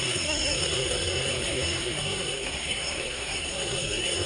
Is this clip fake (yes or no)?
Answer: yes